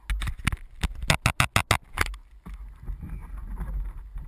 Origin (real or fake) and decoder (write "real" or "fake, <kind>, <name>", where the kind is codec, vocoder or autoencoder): real